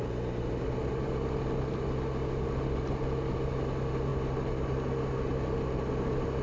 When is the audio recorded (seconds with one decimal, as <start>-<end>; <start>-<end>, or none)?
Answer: 0.0-6.4